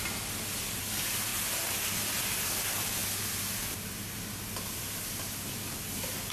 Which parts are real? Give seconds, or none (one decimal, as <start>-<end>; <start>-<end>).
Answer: 0.0-6.3